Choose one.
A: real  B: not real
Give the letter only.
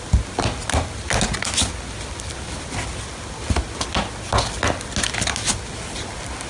A